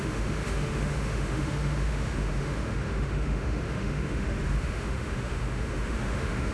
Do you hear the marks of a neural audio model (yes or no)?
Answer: yes